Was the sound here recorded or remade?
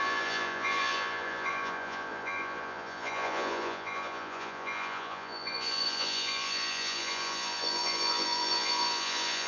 remade